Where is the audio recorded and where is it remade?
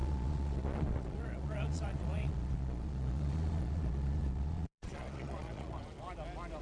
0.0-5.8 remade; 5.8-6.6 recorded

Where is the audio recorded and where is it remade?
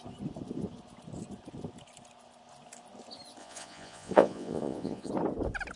0.0-3.4 recorded; 3.4-5.1 remade; 5.1-5.8 recorded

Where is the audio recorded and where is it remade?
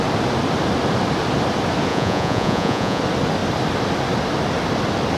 0.0-1.9 recorded; 1.9-3.0 remade; 3.0-5.2 recorded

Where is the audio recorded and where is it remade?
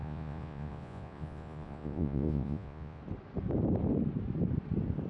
0.0-3.0 remade; 3.0-5.1 recorded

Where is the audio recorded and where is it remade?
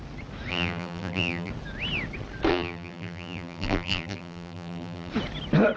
0.0-0.5 recorded; 0.5-1.5 remade; 1.5-2.5 recorded; 2.5-5.1 remade; 5.1-5.8 recorded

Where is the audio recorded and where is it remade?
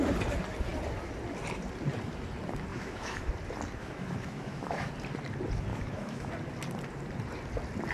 0.0-2.7 recorded; 2.7-3.3 remade; 3.3-3.8 recorded; 3.8-4.9 remade; 4.9-5.7 recorded; 5.7-6.3 remade; 6.3-7.9 recorded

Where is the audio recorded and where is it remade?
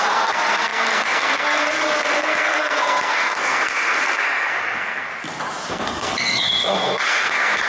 0.0-5.1 remade; 5.1-5.7 recorded; 5.7-7.7 remade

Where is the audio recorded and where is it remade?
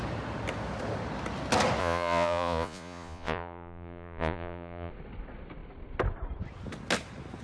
0.0-1.8 recorded; 1.8-4.9 remade; 4.9-7.4 recorded